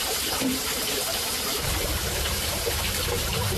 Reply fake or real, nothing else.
fake